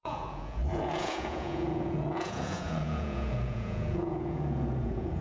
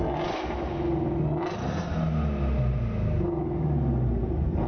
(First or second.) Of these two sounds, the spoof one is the first